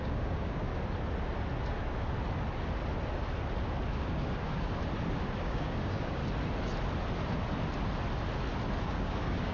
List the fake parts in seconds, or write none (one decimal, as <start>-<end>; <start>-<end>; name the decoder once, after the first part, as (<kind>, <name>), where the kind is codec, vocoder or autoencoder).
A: 0.0-0.7 (codec, DAC); 3.9-4.8; 5.4-6.2; 8.8-9.5